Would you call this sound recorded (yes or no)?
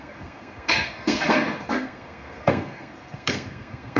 no